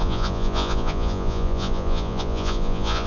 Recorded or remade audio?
remade